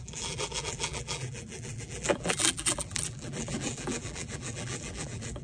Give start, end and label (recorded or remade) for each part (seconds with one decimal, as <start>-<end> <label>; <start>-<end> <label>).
0.0-5.4 remade